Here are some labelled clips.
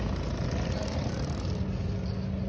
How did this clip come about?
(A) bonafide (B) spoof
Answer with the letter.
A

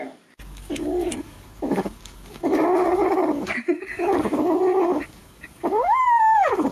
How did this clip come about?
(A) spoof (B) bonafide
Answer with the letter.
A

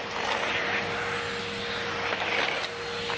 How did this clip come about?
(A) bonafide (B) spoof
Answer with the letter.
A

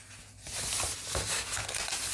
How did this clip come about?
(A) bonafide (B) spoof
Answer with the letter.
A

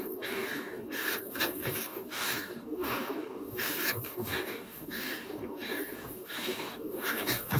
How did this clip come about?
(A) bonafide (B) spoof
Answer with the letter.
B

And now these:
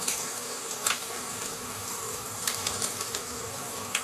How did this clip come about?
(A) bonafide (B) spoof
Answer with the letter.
B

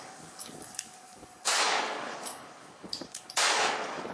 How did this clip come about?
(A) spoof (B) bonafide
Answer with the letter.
A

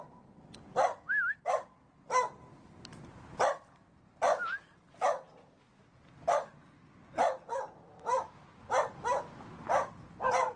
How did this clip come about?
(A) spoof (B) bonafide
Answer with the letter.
B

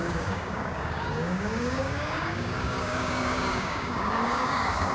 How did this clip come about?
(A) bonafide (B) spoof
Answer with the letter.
B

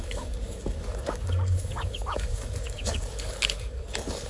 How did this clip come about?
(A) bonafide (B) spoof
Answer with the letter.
B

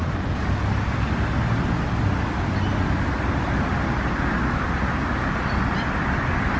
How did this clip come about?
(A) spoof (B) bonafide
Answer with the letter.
B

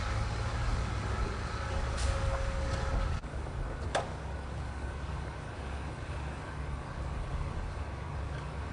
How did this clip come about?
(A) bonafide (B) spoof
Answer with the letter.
B